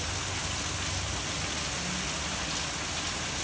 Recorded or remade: recorded